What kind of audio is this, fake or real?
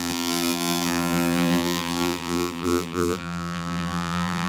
fake